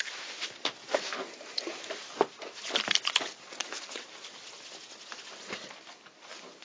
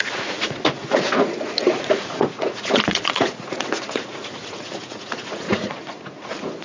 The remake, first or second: second